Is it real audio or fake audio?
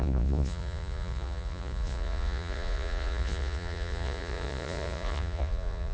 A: fake